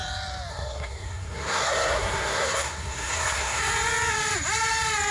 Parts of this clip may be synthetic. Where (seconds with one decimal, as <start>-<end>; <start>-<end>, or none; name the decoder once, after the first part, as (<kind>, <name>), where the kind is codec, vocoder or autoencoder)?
0.5-3.6 (codec, SNAC)